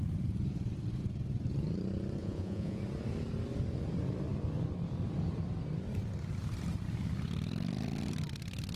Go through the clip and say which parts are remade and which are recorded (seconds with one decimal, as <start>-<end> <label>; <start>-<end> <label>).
0.0-2.2 recorded; 2.2-2.8 remade; 2.8-8.8 recorded